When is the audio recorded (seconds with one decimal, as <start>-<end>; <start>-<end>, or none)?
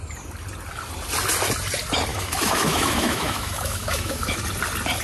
0.0-2.1; 4.4-5.0